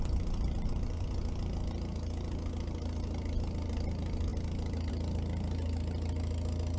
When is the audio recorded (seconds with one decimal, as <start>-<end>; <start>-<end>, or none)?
0.0-6.8